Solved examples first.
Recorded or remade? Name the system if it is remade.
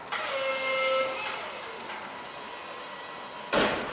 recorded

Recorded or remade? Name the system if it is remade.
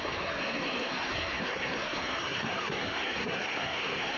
remade, codec, SNAC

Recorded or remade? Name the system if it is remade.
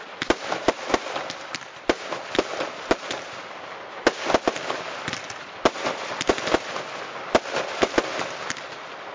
recorded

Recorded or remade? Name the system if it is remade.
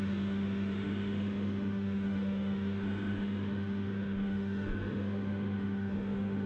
remade, autoencoder, DAC-VAE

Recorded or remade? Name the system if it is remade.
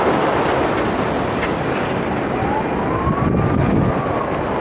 recorded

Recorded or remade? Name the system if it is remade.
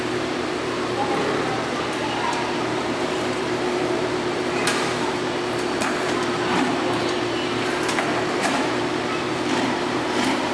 remade, vocoder, BigVGAN v2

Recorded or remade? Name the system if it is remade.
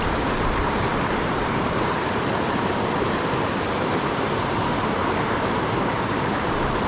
remade, vocoder, BigVGAN v2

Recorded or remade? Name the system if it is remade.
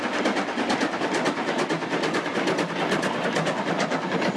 recorded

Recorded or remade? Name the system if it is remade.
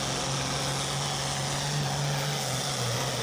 recorded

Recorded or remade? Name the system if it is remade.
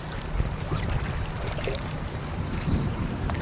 remade, vocoder, BigVGAN v2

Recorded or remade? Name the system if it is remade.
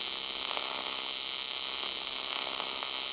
recorded